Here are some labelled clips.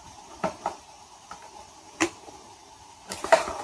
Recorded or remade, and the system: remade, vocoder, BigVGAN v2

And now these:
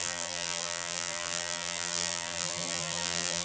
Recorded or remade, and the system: remade, vocoder, BigVGAN v2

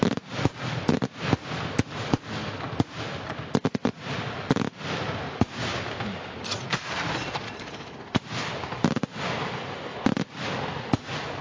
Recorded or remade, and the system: recorded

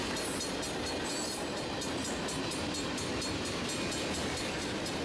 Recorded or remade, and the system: recorded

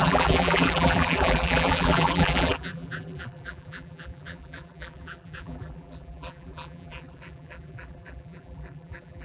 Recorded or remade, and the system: remade, vocoder, BigVGAN v2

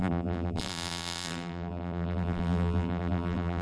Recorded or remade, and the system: remade, vocoder, BigVGAN v2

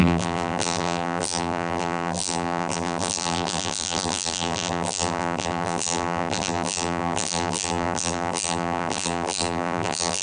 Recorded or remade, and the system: remade, vocoder, BigVGAN v2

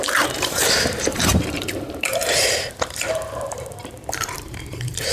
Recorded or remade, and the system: remade, vocoder, BigVGAN v2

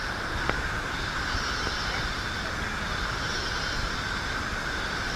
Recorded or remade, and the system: recorded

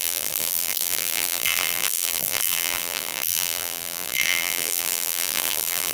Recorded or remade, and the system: remade, vocoder, BigVGAN v2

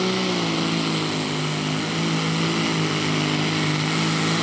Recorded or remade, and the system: recorded